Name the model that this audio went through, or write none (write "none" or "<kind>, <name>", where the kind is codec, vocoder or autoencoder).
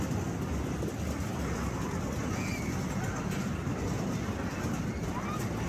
none